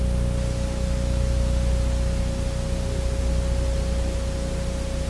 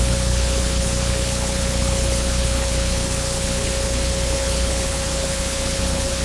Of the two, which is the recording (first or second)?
first